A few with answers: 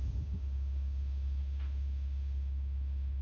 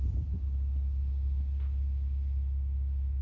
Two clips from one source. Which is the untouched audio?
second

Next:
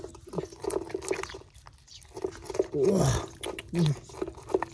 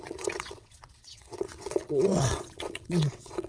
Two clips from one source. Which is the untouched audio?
first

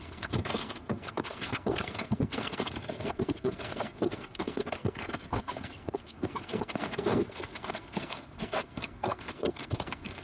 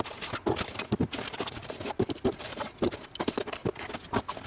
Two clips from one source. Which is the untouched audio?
second